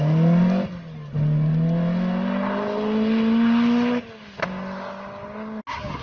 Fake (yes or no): no